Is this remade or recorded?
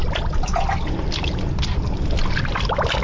recorded